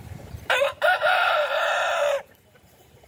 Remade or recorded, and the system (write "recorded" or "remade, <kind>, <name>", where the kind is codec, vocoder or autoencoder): remade, vocoder, BigVGAN v2